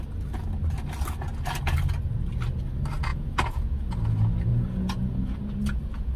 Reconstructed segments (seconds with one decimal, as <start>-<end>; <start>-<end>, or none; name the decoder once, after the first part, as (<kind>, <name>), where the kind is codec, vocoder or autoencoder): 3.1-3.9 (vocoder, Vocos); 4.5-6.2

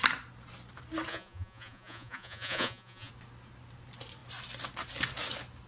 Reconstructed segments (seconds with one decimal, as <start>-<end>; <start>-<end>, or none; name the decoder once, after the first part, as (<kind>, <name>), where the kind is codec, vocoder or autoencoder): 1.1-3.1 (vocoder, Vocos)

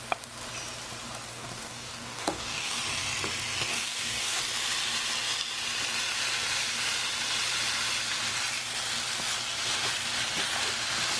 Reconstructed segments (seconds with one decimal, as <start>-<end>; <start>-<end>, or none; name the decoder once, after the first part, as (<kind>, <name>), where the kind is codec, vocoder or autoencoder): 1.3-2.8 (codec, DAC); 3.7-4.4

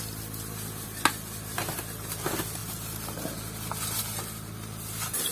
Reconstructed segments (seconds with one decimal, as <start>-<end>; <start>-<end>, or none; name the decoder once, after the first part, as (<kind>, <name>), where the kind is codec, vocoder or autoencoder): none

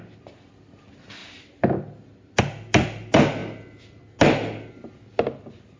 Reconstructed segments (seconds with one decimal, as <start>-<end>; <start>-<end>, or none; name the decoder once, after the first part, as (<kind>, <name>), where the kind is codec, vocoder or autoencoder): none

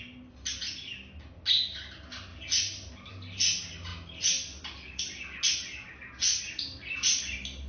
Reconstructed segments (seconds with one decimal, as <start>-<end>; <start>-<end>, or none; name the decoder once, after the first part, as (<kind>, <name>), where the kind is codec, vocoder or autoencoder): none

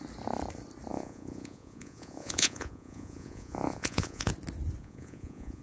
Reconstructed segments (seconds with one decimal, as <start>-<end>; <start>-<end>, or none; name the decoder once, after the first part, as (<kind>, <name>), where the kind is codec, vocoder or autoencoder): 0.9-4.3 (vocoder, Vocos); 4.8-5.6

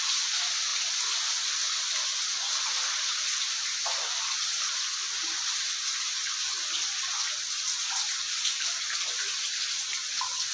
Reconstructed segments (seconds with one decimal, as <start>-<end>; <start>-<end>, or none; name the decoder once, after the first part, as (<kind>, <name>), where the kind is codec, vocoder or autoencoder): none